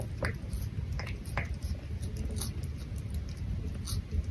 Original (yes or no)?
yes